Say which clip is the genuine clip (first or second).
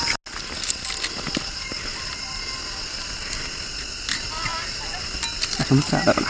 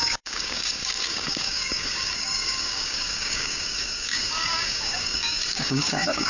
first